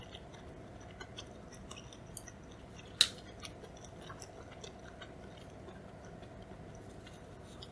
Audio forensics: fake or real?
real